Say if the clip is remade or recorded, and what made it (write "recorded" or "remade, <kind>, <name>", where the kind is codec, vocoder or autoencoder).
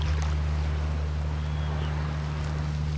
recorded